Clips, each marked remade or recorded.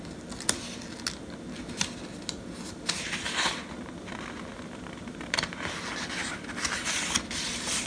recorded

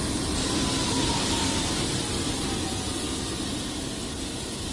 recorded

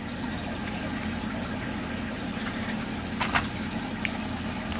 recorded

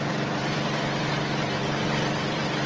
remade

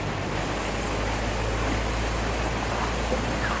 recorded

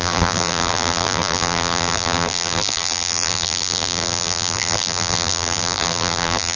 remade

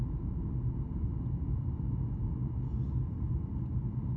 recorded